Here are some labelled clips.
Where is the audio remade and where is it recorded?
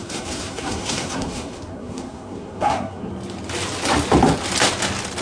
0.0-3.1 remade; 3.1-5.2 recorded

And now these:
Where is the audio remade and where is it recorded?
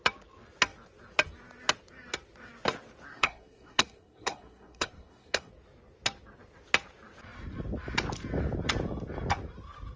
0.0-3.1 recorded; 3.1-5.5 remade; 5.5-10.0 recorded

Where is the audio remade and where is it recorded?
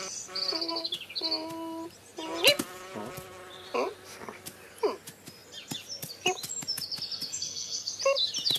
0.0-7.3 recorded; 7.3-7.9 remade; 7.9-8.6 recorded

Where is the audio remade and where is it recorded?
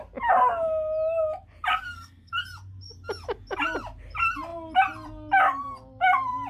0.0-1.7 recorded; 1.7-2.3 remade; 2.3-6.5 recorded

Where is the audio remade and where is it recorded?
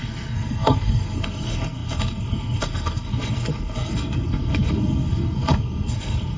0.0-6.4 remade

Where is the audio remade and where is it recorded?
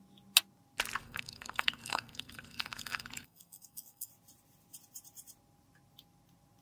0.0-1.0 recorded; 1.0-4.1 remade; 4.1-6.6 recorded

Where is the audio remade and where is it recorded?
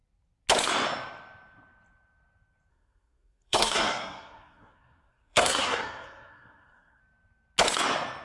0.0-2.7 recorded; 2.7-7.0 remade; 7.0-8.2 recorded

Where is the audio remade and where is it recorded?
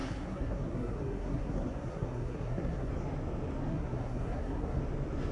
0.0-2.9 remade; 2.9-3.7 recorded; 3.7-4.8 remade; 4.8-5.3 recorded